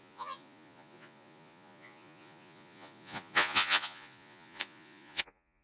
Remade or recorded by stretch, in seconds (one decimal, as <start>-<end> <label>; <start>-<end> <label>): 0.0-5.6 remade